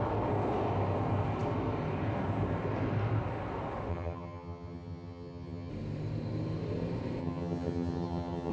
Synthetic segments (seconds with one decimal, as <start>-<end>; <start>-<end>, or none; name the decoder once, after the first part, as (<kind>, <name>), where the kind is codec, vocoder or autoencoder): 3.9-5.7 (vocoder, HiFi-GAN); 7.2-8.5